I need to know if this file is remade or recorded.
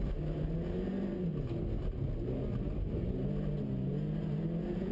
recorded